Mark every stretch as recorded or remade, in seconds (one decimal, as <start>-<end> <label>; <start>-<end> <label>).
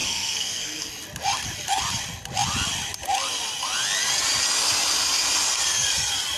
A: 0.0-0.9 remade; 0.9-6.4 recorded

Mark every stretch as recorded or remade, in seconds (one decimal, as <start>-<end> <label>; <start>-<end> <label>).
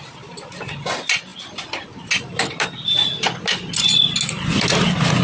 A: 0.0-5.2 recorded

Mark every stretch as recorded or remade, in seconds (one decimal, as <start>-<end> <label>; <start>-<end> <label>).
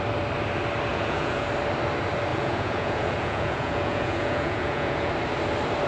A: 0.0-0.9 recorded; 0.9-1.5 remade; 1.5-2.3 recorded; 2.3-5.1 remade; 5.1-5.9 recorded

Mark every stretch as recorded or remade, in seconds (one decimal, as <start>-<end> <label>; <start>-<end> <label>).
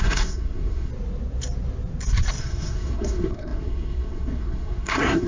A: 0.0-0.9 remade; 0.9-2.4 recorded; 2.4-5.3 remade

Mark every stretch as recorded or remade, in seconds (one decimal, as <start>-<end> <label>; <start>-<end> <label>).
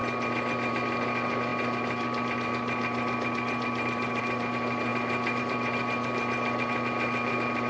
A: 0.0-7.7 recorded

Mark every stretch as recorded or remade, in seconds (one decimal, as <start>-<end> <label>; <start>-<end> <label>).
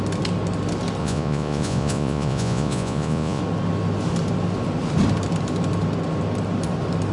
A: 0.0-1.0 recorded; 1.0-3.4 remade; 3.4-7.1 recorded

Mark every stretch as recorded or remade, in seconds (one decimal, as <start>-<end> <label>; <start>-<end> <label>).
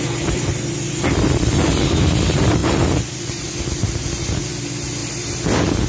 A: 0.0-5.0 remade; 5.0-5.9 recorded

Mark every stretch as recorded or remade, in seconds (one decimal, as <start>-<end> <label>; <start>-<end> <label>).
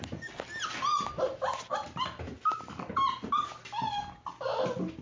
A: 0.0-5.0 recorded